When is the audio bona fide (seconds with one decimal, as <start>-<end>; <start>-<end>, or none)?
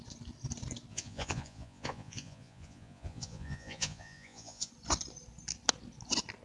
0.0-0.9; 4.7-6.4